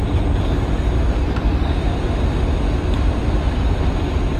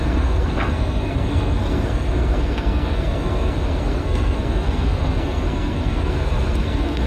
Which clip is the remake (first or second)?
second